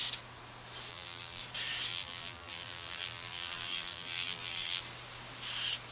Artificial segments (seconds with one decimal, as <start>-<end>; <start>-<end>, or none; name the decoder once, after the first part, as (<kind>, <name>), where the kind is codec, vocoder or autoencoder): 0.9-1.4 (vocoder, BigVGAN v2); 1.9-4.8